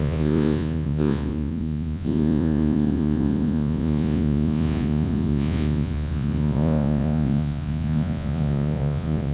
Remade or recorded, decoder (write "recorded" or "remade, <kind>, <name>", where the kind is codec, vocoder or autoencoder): remade, vocoder, Vocos